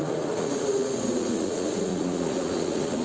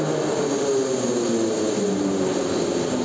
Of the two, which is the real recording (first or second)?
second